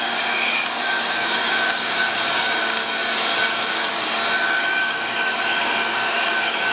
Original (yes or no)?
no